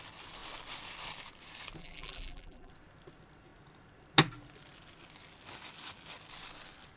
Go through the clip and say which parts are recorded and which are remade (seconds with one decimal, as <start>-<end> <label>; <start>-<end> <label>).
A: 0.0-1.8 recorded; 1.8-2.7 remade; 2.7-7.0 recorded

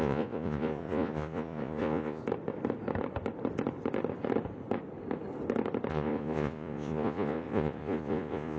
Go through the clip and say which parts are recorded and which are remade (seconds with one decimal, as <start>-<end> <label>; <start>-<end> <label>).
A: 0.0-2.2 remade; 2.2-5.9 recorded; 5.9-8.6 remade

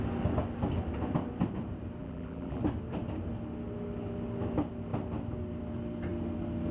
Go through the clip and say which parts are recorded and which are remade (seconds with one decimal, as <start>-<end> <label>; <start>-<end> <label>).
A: 0.0-2.0 recorded; 2.0-2.6 remade; 2.6-6.7 recorded

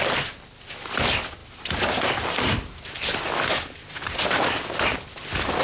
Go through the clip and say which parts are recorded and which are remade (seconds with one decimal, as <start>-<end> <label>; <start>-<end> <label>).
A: 0.0-5.6 recorded

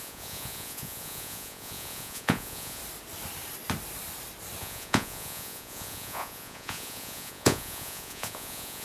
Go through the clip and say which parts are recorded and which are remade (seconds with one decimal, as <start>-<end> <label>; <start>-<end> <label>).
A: 0.0-2.8 remade; 2.8-4.6 recorded; 4.6-8.8 remade